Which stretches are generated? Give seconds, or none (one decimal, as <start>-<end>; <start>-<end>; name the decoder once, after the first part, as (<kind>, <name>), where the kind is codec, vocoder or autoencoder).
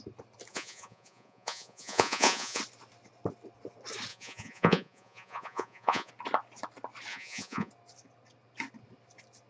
0.5-2.6 (vocoder, Vocos); 4.1-6.1; 7.1-7.7